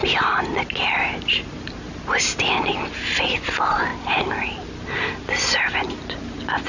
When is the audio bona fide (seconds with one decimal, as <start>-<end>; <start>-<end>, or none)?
0.0-6.7